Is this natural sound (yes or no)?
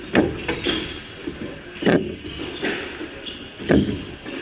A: yes